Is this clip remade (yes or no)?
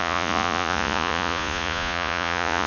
yes